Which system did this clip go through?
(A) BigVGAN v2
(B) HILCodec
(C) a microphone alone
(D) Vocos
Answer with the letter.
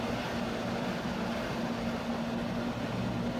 C